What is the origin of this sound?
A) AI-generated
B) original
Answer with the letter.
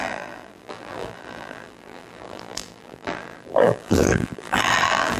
A